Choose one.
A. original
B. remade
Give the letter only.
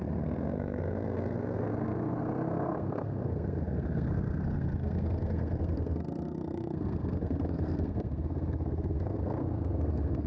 B